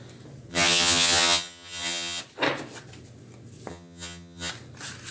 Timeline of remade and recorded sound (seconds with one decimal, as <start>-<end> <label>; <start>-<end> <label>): 0.0-0.5 recorded; 0.5-2.2 remade; 2.2-3.7 recorded; 3.7-4.5 remade; 4.5-5.1 recorded